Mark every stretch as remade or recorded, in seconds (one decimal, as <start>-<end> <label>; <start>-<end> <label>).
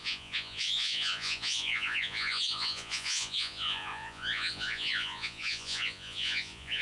0.0-6.8 remade